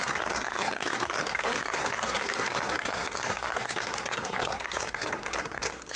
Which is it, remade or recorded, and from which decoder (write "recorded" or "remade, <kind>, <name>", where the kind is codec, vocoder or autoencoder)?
remade, codec, SNAC